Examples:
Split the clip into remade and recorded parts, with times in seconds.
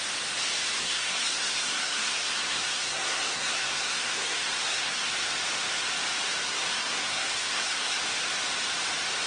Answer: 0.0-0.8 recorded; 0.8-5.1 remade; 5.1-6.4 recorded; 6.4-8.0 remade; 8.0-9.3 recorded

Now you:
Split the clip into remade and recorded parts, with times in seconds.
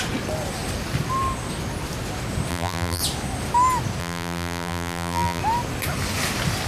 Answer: 0.0-2.5 recorded; 2.5-3.0 remade; 3.0-4.0 recorded; 4.0-5.4 remade; 5.4-6.7 recorded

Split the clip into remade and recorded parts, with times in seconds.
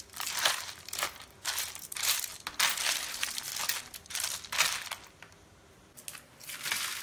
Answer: 0.0-2.3 remade; 2.3-2.9 recorded; 2.9-3.5 remade; 3.5-6.3 recorded; 6.3-7.0 remade